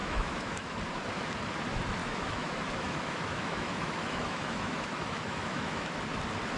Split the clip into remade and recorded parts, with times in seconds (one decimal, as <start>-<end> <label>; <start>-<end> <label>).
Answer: 0.0-0.8 remade; 0.8-2.0 recorded; 2.0-6.0 remade; 6.0-6.6 recorded